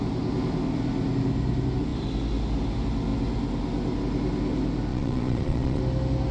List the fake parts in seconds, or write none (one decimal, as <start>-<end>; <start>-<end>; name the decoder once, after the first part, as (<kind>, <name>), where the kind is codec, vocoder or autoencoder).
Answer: 4.9-5.8 (vocoder, Vocos)

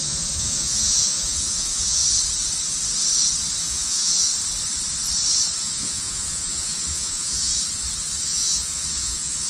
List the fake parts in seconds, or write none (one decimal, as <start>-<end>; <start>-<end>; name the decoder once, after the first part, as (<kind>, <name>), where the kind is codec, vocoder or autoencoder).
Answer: 0.0-2.0 (vocoder, Vocos); 3.6-4.3; 5.6-7.5; 8.2-9.5

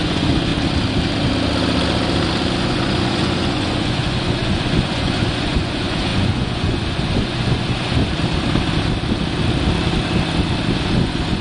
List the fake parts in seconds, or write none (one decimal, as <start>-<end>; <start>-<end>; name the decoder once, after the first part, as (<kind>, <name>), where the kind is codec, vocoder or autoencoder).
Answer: 0.0-0.5 (vocoder, Vocos); 2.6-8.0; 10.8-11.4

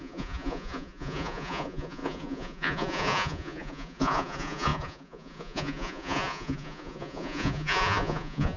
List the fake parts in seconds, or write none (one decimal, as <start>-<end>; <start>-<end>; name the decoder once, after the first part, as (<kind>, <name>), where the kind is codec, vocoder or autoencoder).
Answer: 0.0-8.6 (vocoder, Vocos)